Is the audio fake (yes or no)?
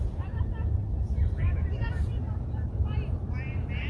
yes